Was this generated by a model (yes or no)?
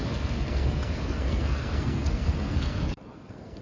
yes